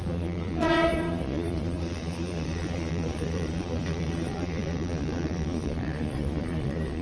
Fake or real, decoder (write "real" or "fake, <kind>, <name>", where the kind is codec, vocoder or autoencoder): fake, vocoder, Vocos